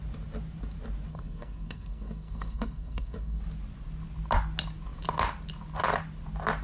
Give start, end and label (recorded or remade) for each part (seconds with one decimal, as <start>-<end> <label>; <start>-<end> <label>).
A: 0.0-1.1 recorded; 1.1-3.4 remade; 3.4-6.6 recorded